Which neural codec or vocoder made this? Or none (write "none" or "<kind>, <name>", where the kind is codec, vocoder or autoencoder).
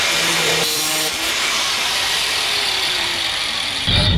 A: vocoder, BigVGAN v2